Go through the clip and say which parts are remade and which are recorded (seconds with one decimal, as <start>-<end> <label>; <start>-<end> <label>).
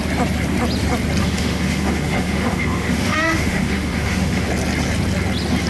0.0-1.2 recorded; 1.2-4.5 remade; 4.5-5.7 recorded